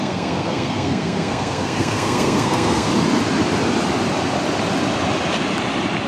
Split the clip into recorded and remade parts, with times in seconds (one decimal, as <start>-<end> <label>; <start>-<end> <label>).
0.0-2.9 remade; 2.9-6.1 recorded